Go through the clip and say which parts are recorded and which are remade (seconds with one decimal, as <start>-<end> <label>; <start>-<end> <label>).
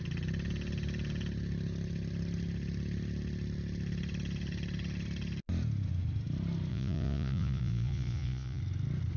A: 0.0-6.7 recorded; 6.7-8.6 remade; 8.6-9.2 recorded